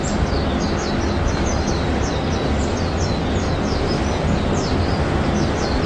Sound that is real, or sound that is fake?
real